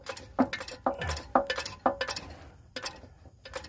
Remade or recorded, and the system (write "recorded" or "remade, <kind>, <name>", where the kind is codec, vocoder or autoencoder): recorded